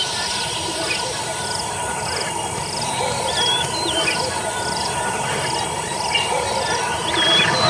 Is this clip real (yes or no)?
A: no